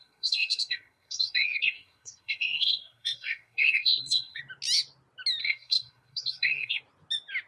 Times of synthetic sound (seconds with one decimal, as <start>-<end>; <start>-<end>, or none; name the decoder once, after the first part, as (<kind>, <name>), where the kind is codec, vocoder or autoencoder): 0.0-4.4 (codec, SNAC); 5.4-6.8